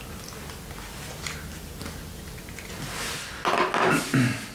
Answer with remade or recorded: recorded